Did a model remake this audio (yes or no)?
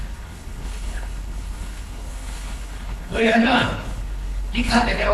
yes